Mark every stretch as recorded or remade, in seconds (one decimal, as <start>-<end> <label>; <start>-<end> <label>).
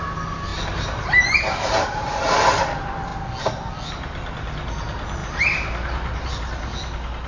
0.0-0.5 recorded; 0.5-2.2 remade; 2.2-5.2 recorded; 5.2-6.3 remade; 6.3-7.3 recorded